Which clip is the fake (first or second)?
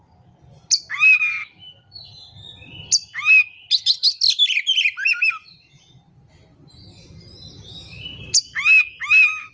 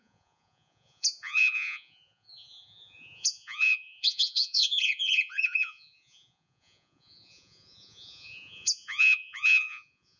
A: second